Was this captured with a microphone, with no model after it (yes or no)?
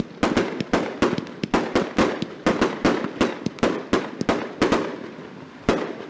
yes